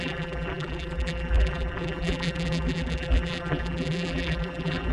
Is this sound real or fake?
fake